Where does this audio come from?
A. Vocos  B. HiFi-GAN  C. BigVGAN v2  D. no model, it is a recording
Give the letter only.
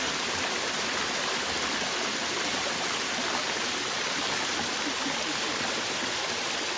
D